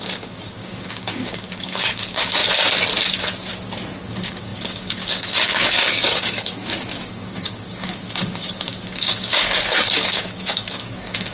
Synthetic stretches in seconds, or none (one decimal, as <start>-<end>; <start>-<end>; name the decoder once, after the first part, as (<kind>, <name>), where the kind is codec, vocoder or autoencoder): 0.0-2.4 (codec, DAC); 4.0-11.3